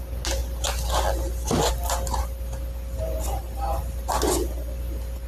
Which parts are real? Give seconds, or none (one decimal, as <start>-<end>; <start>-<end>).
0.0-5.3